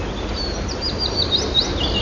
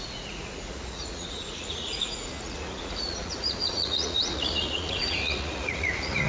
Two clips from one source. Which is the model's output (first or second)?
second